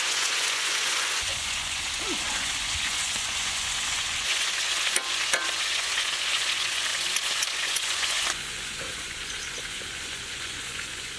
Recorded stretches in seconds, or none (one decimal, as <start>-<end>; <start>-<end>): none